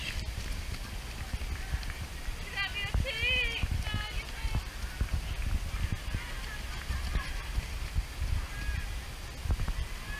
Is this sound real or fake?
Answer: real